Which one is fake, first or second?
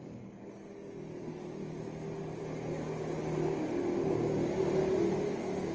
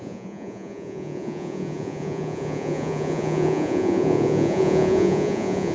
second